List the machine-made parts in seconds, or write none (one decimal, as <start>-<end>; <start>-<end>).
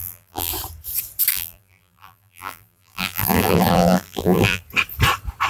0.0-0.5; 1.3-4.6